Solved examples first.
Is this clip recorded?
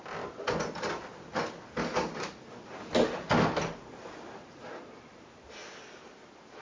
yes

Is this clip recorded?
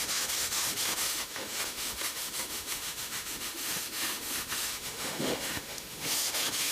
no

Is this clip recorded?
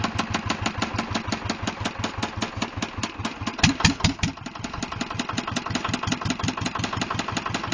yes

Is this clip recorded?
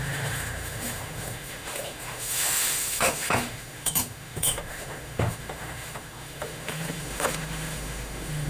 no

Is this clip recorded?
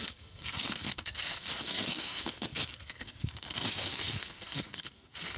no